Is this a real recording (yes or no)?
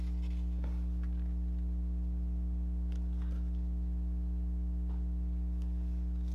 yes